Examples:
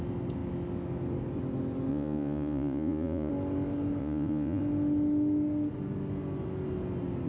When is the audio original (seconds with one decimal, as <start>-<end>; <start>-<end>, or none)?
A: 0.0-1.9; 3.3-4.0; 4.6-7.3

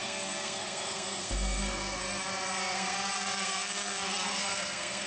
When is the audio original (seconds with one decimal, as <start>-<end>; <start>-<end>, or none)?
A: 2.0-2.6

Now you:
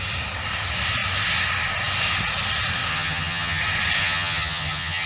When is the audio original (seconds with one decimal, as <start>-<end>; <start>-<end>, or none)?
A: 0.0-2.9; 3.6-4.0

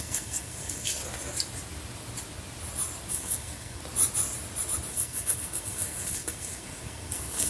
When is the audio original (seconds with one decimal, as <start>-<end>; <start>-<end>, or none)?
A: 1.0-3.1; 3.8-4.9

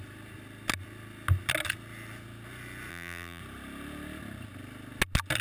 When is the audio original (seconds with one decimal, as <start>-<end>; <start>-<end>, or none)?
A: 0.0-2.9; 3.4-5.4